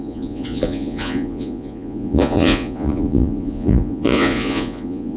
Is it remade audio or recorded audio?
remade